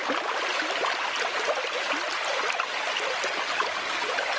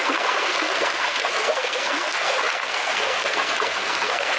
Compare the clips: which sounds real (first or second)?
first